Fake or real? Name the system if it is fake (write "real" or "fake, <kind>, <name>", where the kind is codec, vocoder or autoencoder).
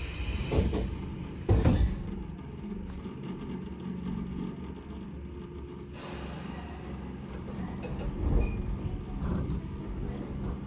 real